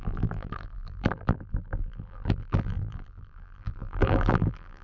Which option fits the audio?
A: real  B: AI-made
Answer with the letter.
B